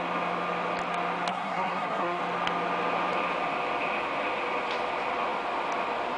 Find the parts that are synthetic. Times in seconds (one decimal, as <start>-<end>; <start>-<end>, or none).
1.3-2.2